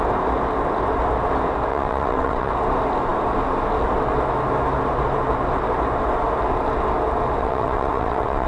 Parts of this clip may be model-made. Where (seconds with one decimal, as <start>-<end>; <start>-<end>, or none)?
1.7-2.5; 7.4-8.5